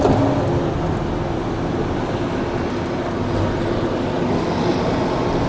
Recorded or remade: recorded